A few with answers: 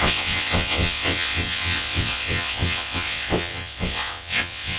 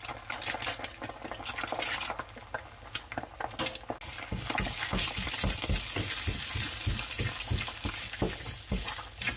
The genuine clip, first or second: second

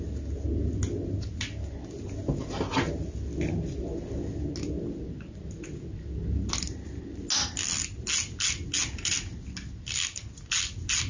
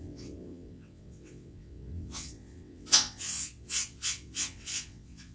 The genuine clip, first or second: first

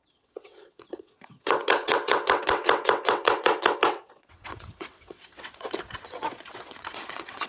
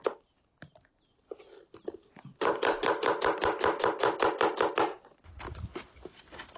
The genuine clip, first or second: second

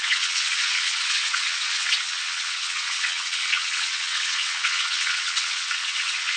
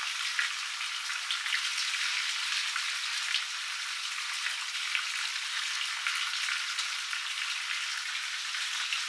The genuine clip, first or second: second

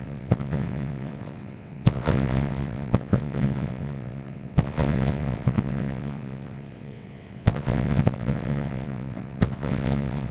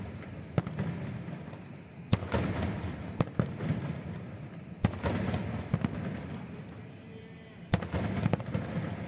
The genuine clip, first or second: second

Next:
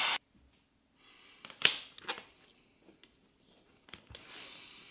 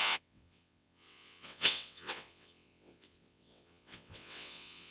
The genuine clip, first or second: first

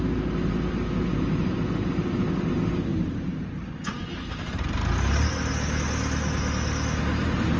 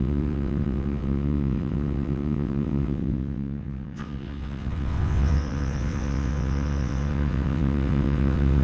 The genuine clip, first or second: first